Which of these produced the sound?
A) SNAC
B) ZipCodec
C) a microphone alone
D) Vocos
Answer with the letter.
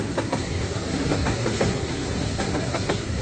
A